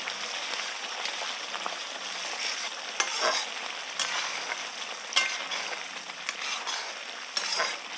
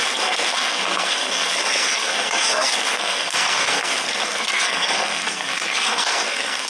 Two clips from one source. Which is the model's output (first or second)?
second